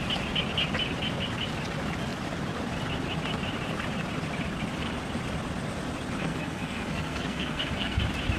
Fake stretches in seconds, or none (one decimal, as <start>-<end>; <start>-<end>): 6.2-8.0